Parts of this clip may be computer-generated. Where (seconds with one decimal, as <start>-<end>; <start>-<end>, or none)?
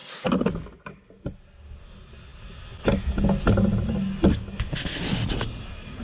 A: none